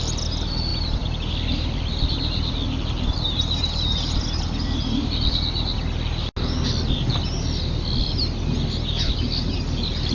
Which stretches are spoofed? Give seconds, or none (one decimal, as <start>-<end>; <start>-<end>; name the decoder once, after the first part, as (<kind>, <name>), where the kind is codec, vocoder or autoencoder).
none